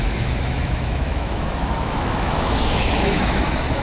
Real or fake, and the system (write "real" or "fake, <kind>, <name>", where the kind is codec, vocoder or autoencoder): fake, autoencoder, DAC-VAE